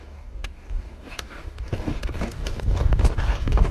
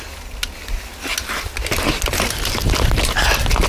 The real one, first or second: second